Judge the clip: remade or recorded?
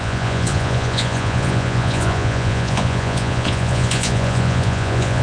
remade